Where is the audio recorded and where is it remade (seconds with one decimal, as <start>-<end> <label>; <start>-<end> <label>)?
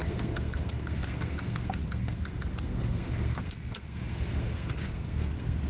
0.0-5.7 remade